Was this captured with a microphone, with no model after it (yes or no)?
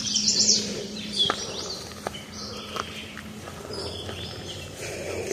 no